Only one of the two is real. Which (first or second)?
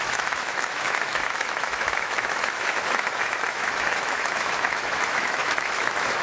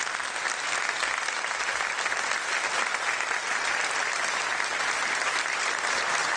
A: second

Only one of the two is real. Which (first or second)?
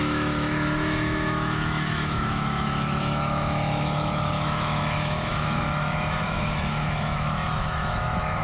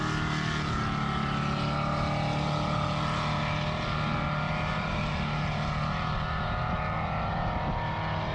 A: second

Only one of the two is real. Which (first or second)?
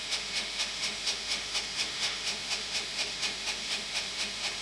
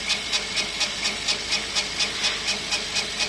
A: second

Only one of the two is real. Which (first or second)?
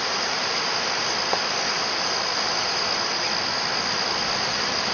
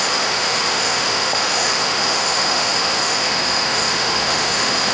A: first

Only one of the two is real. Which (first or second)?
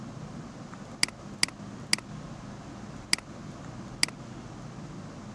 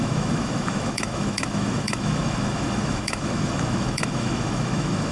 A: first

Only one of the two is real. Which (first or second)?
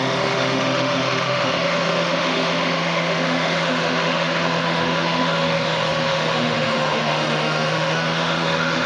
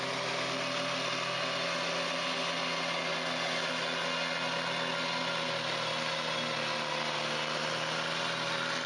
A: second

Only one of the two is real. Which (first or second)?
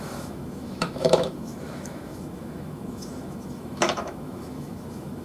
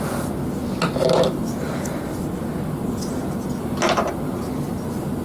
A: second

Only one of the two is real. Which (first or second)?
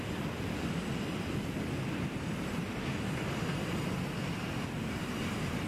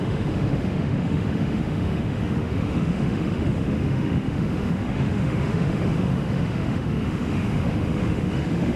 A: first